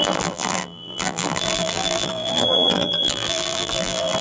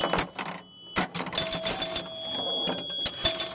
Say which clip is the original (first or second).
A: second